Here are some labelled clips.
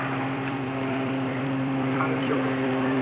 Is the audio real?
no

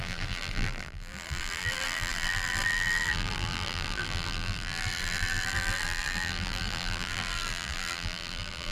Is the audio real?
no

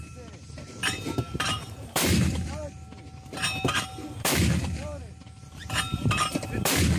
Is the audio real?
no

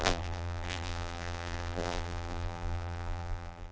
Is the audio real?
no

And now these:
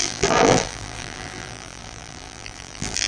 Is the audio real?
no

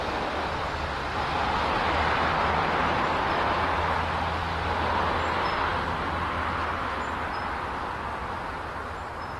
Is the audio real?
yes